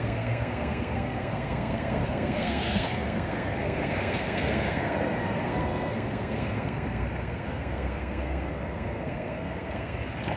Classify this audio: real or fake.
fake